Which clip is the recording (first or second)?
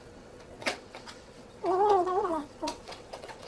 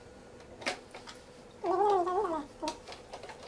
second